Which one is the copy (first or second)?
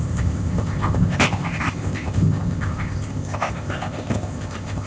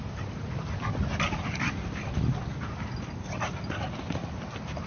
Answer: first